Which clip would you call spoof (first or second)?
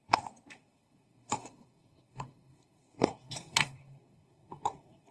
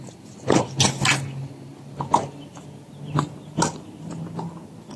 first